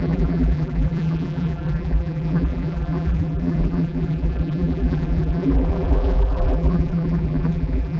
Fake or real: fake